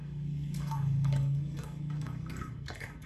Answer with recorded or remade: remade